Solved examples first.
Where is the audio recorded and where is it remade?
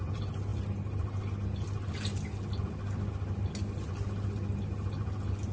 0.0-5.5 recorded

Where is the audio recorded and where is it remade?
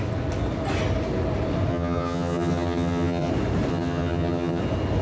0.0-1.7 recorded; 1.7-3.3 remade; 3.3-3.7 recorded; 3.7-4.6 remade; 4.6-5.0 recorded